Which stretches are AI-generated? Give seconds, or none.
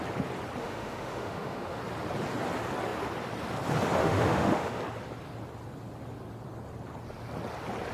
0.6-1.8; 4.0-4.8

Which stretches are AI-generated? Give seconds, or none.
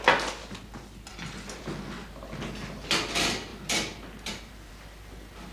none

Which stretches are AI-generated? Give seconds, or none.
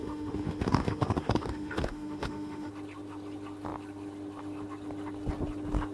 0.0-2.7